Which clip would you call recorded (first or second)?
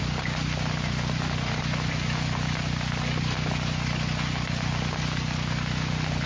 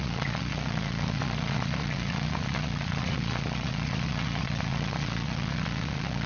first